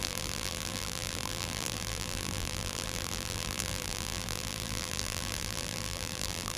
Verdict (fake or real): fake